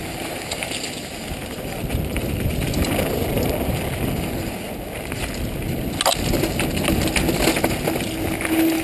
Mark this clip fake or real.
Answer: real